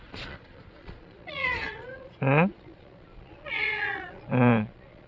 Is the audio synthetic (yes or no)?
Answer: yes